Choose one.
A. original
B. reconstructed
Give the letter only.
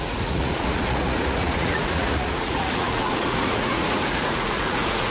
B